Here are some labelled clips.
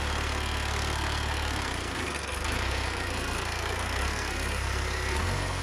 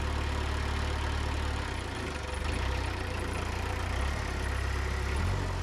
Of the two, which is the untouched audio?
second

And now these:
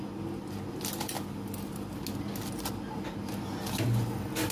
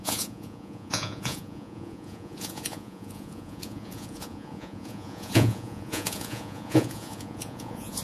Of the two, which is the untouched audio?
first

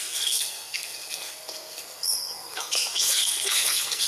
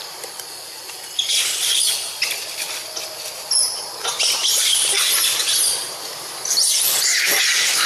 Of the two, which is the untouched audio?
second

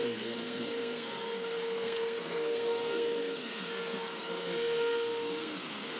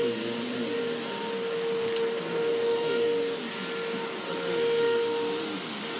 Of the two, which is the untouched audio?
second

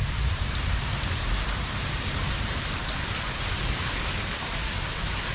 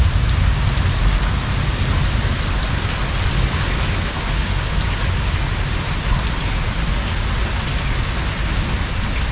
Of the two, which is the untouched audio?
second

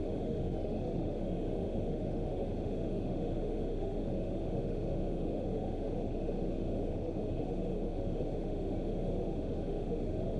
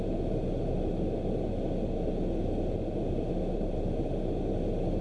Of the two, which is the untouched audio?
second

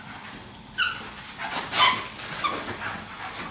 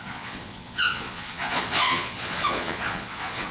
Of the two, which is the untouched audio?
first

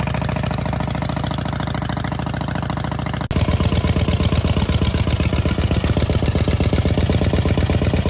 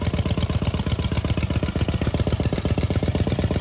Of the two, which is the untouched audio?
first